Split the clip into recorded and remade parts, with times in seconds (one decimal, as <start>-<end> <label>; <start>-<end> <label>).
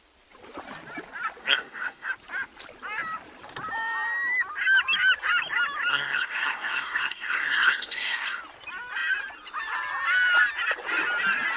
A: 0.0-1.4 recorded; 1.4-2.1 remade; 2.1-5.9 recorded; 5.9-8.4 remade; 8.4-11.6 recorded